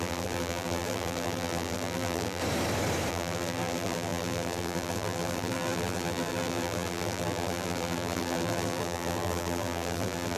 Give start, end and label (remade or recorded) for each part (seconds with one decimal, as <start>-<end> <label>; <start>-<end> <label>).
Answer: 0.0-2.4 remade; 2.4-3.1 recorded; 3.1-10.4 remade